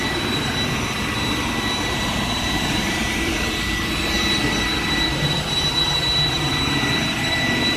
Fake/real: fake